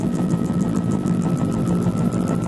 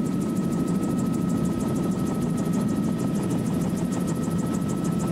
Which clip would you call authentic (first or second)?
second